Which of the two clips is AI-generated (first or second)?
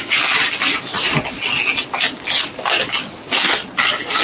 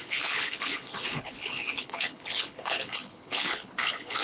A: second